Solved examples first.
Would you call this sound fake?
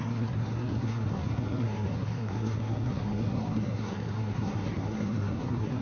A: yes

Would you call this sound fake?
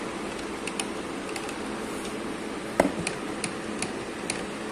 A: no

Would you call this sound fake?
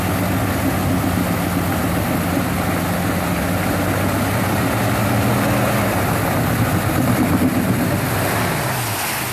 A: no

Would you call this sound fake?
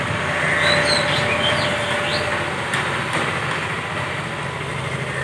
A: no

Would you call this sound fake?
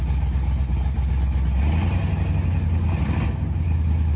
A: no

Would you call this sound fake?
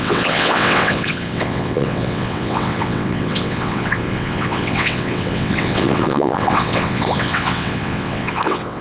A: yes